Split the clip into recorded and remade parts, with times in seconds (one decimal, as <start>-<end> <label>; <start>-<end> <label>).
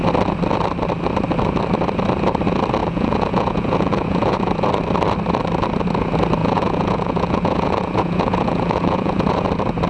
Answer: 0.0-2.8 recorded; 2.8-4.5 remade; 4.5-6.4 recorded; 6.4-9.5 remade; 9.5-9.9 recorded